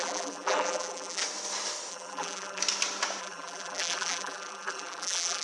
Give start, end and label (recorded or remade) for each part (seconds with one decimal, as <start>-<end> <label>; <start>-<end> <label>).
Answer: 0.0-1.2 remade; 1.2-1.9 recorded; 1.9-2.6 remade; 2.6-3.2 recorded; 3.2-5.4 remade